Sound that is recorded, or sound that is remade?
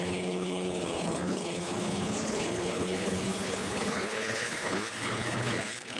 remade